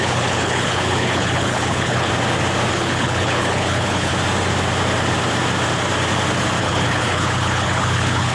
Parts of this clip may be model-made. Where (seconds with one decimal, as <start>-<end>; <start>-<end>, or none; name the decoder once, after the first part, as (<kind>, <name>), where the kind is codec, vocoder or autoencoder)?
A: 0.0-2.1 (codec, HILCodec); 2.7-4.1; 6.6-8.3